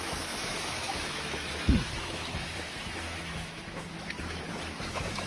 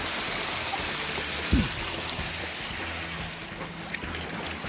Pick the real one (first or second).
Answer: second